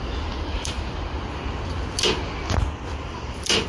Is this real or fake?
real